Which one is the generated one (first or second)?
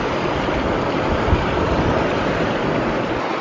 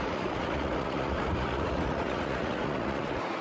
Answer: second